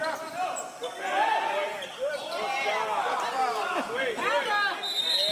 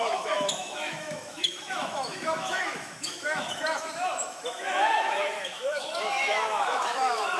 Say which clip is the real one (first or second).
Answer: first